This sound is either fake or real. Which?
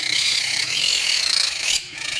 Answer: fake